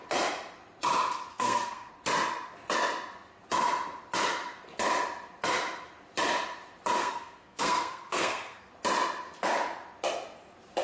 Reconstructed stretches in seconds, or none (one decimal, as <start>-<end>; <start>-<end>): 1.3-1.9; 7.0-8.7